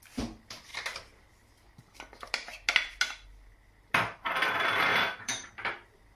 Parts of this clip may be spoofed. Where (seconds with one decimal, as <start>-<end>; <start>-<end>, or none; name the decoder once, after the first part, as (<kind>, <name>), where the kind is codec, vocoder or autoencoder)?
4.9-5.5 (vocoder, BigVGAN v2)